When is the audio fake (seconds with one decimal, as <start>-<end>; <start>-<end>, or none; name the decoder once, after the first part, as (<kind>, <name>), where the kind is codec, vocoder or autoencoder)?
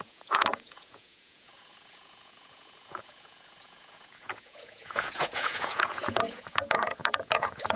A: 0.0-7.8 (vocoder, Vocos)